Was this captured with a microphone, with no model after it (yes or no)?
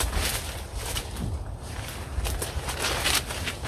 yes